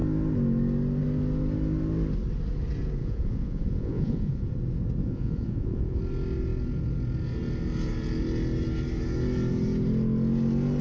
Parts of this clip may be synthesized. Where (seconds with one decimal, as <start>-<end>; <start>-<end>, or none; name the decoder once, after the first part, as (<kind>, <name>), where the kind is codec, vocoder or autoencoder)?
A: 3.0-4.5 (vocoder, Vocos); 5.0-6.0